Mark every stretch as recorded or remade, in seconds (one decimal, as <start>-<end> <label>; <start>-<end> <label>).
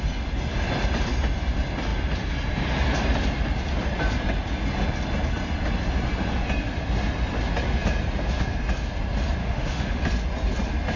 0.0-9.4 recorded; 9.4-10.0 remade; 10.0-11.0 recorded